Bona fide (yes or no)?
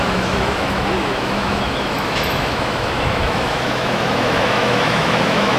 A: no